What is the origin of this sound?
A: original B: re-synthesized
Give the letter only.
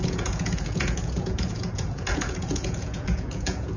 B